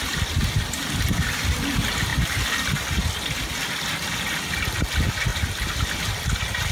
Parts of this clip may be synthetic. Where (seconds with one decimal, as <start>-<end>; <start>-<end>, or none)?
none